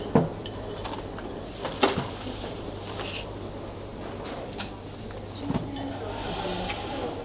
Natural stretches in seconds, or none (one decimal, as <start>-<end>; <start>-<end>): 0.0-7.2